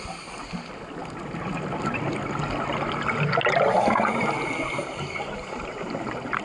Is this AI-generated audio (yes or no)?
no